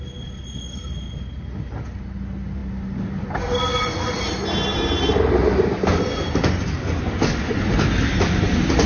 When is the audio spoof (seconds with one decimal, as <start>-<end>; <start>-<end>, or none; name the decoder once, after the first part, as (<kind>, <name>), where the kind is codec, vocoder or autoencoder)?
none